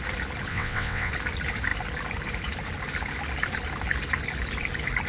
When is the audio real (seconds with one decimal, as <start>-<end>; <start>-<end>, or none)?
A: 0.0-0.5; 1.1-5.1